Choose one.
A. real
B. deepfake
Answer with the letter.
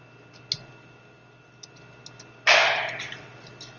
A